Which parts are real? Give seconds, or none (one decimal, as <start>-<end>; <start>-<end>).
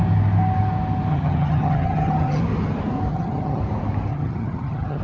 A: 0.0-1.1; 2.4-3.1; 3.6-4.1